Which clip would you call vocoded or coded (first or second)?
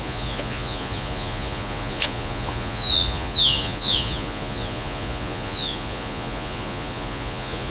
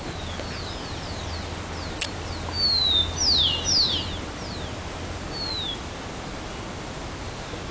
first